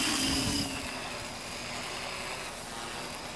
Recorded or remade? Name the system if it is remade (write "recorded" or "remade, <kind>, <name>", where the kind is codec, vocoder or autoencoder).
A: recorded